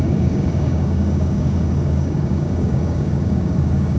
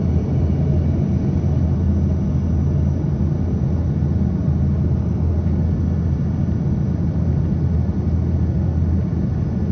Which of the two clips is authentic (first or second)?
second